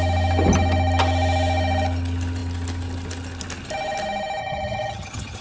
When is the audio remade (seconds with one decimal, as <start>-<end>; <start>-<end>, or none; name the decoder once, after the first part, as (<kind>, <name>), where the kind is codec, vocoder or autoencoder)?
4.4-5.4 (vocoder, HiFi-GAN)